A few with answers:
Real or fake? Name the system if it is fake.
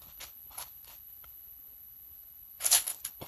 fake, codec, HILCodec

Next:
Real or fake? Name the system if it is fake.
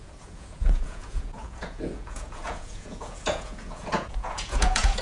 fake, vocoder, Vocos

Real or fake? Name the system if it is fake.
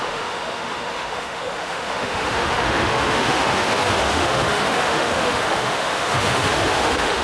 fake, autoencoder, DAC-VAE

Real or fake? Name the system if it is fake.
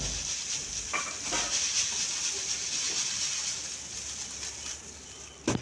real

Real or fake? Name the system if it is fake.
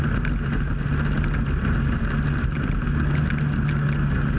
real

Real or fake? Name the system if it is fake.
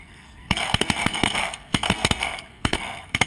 fake, codec, SNAC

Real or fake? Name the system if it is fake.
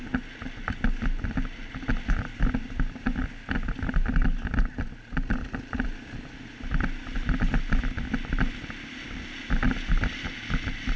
real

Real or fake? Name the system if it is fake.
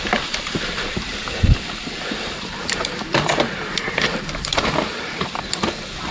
fake, vocoder, BigVGAN v2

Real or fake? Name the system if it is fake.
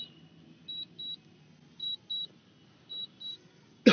real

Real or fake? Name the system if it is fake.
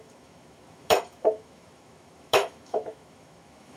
fake, autoencoder, DAC-VAE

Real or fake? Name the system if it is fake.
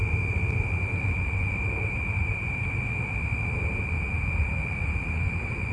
fake, vocoder, BigVGAN v2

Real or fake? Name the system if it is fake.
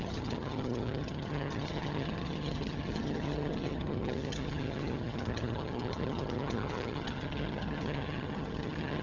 fake, vocoder, HiFi-GAN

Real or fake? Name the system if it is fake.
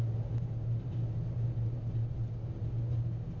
real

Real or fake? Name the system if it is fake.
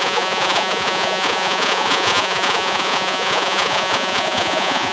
fake, vocoder, Vocos